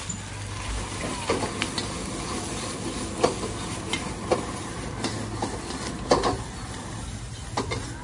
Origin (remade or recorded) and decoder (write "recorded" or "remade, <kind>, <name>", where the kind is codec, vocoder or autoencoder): recorded